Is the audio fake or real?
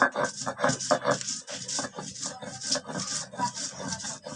real